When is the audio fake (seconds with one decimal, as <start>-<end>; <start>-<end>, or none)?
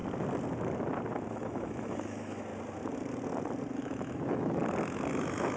1.3-2.5; 3.8-4.6; 5.1-5.6